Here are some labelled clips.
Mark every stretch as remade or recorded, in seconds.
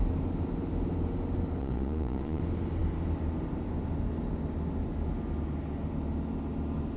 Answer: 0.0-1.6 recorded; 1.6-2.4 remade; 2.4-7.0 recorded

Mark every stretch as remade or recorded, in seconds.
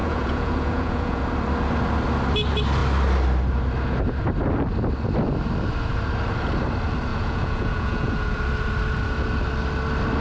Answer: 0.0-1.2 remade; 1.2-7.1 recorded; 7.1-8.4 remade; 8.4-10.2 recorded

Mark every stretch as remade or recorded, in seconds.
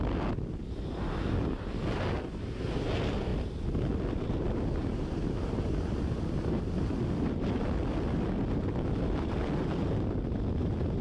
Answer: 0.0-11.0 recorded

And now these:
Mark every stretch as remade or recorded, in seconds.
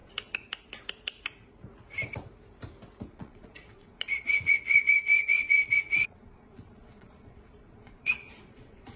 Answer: 0.0-3.1 recorded; 3.1-9.0 remade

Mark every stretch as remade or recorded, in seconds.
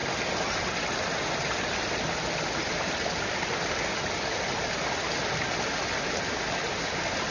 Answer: 0.0-7.3 recorded